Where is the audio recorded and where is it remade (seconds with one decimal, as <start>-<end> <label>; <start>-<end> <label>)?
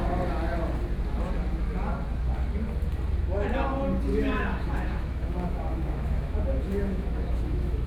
0.0-4.1 recorded; 4.1-7.9 remade